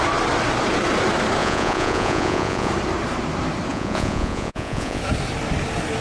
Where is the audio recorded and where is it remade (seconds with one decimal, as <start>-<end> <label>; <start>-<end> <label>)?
0.0-1.4 recorded; 1.4-2.7 remade; 2.7-3.7 recorded; 3.7-5.0 remade; 5.0-6.0 recorded